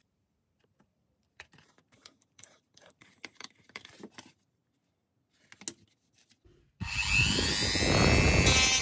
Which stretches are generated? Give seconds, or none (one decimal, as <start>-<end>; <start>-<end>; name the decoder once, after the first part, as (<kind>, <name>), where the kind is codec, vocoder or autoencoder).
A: 0.0-4.6 (vocoder, BigVGAN v2)